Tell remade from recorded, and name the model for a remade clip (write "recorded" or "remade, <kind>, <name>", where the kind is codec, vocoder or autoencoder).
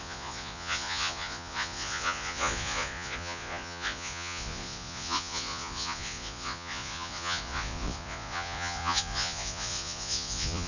remade, vocoder, Vocos